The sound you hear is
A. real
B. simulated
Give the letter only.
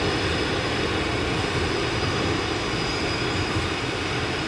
A